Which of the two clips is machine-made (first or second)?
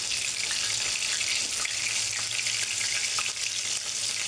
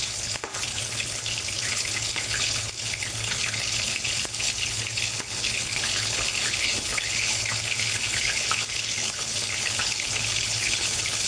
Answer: second